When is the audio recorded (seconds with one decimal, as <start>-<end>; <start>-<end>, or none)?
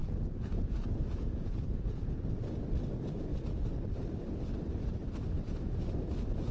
2.1-6.5